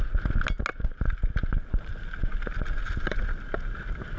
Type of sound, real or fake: real